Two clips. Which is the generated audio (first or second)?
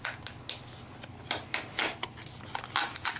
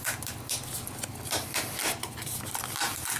second